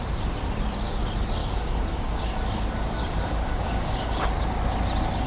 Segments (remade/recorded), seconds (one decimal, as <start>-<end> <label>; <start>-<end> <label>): 0.0-1.4 recorded; 1.4-2.2 remade; 2.2-3.0 recorded; 3.0-4.3 remade; 4.3-5.3 recorded